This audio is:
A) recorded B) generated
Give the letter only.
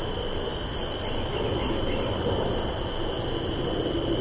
A